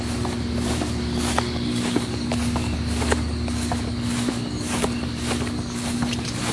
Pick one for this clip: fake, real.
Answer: fake